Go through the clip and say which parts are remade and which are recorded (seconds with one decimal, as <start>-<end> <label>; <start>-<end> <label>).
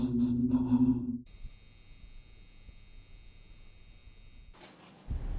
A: 0.0-0.4 recorded; 0.4-1.5 remade; 1.5-5.4 recorded